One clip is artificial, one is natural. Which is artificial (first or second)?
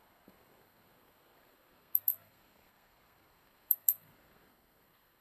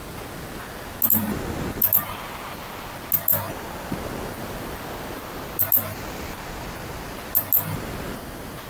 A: first